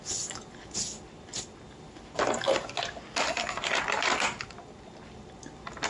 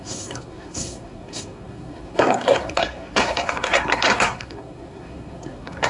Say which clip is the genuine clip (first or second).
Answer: first